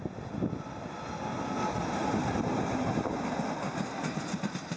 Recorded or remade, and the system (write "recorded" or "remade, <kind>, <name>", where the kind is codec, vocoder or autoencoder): recorded